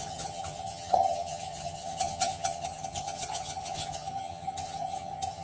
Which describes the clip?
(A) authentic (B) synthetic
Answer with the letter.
B